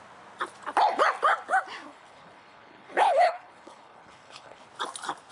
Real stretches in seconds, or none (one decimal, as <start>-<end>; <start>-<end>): 0.0-1.9; 4.7-5.3